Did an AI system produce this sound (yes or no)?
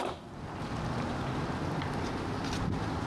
no